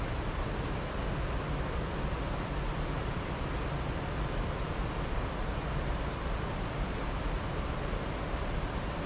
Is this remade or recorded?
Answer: recorded